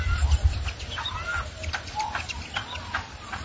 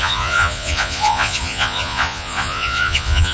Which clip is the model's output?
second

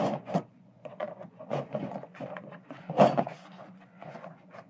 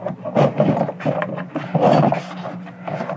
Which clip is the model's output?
first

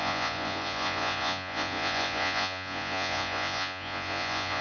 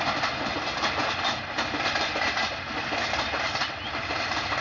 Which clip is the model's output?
first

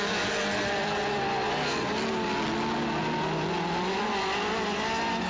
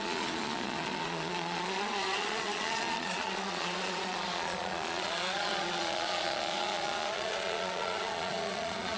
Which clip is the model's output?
second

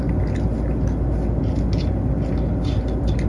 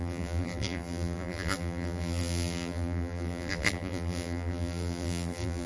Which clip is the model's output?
second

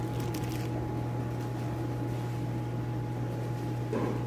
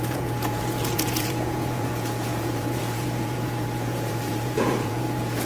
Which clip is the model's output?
second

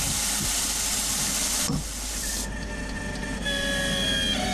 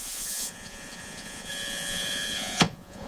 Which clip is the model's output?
second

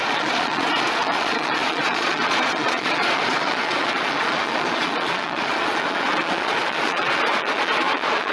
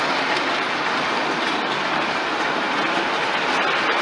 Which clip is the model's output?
first